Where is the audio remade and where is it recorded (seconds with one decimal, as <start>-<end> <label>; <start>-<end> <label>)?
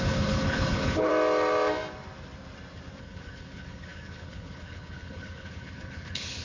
0.0-1.1 remade; 1.1-3.0 recorded; 3.0-6.4 remade